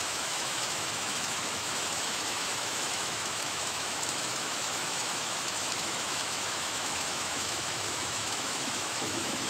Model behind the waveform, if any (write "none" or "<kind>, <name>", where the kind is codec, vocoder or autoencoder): autoencoder, DAC-VAE